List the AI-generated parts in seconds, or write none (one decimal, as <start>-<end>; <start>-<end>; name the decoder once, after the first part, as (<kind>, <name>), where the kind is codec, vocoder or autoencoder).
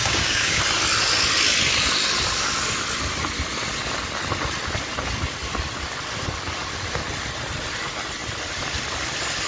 0.0-0.6 (codec, DAC)